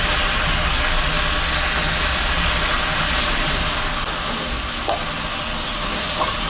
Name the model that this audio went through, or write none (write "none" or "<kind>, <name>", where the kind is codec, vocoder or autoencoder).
none